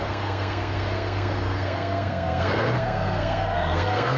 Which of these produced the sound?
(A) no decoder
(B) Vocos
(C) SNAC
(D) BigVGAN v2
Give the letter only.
C